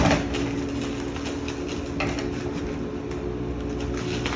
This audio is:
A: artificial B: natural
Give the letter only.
B